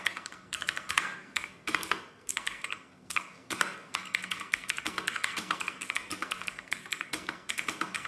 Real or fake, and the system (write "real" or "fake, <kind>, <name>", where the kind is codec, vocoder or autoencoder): fake, codec, SNAC